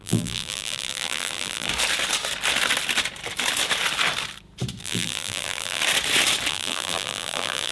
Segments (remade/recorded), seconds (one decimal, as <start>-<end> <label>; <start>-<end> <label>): 0.0-1.7 remade; 1.7-4.8 recorded; 4.8-5.8 remade; 5.8-6.5 recorded; 6.5-7.7 remade